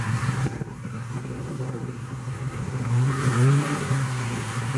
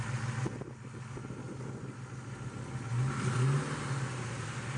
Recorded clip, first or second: second